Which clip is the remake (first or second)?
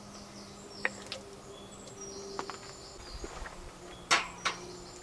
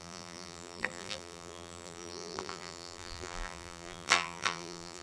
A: second